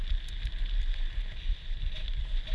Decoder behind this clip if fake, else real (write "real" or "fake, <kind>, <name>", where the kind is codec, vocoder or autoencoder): real